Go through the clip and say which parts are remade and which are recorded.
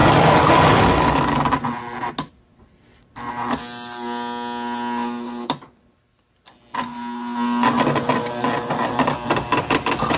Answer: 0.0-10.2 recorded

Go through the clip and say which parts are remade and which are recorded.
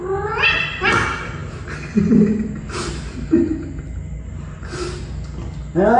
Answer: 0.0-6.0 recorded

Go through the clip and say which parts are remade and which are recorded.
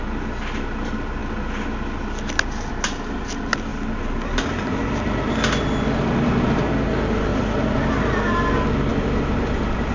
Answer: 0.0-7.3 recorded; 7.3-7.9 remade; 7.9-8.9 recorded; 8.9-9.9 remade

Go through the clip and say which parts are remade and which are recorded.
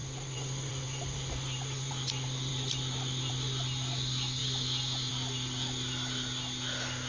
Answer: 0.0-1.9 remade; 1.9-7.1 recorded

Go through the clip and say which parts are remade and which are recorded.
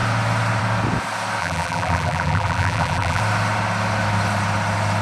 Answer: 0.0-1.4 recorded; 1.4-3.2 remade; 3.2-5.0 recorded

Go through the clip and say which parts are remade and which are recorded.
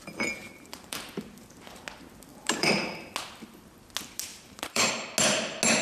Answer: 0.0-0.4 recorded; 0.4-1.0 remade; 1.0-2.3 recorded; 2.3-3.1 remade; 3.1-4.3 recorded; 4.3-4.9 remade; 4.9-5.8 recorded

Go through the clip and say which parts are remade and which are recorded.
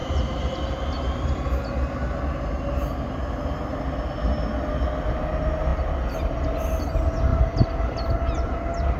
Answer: 0.0-1.3 remade; 1.3-9.0 recorded